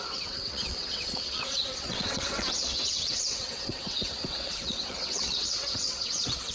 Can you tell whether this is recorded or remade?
remade